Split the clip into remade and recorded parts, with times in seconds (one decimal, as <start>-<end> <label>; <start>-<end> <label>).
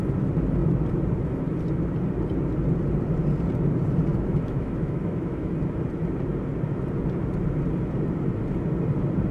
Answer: 0.0-4.1 recorded; 4.1-5.5 remade; 5.5-9.3 recorded